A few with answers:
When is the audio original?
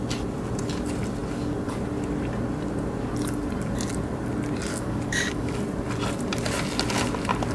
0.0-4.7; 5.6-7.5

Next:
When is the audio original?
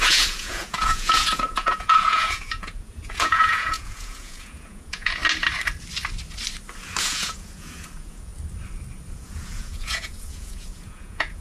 5.2-7.0; 8.3-9.1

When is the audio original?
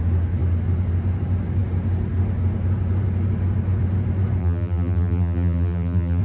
0.0-4.4